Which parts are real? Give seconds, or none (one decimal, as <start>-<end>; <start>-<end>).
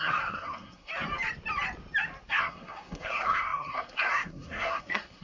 0.9-2.3